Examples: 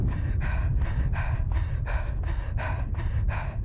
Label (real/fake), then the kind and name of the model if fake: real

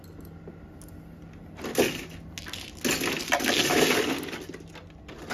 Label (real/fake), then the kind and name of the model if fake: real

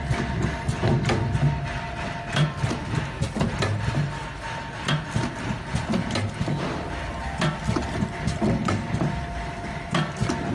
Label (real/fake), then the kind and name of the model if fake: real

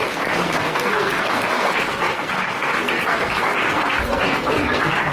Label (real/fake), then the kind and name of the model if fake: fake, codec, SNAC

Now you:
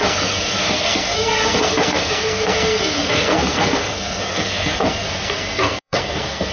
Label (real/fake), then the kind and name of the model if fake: fake, codec, SNAC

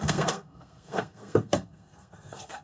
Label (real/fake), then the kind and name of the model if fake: fake, codec, SNAC